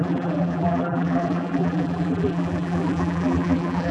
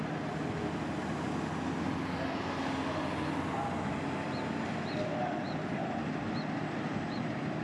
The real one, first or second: second